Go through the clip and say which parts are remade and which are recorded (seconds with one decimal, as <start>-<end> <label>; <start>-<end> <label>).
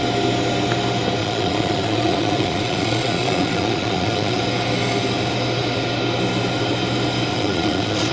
0.0-1.2 recorded; 1.2-4.4 remade; 4.4-7.3 recorded; 7.3-8.1 remade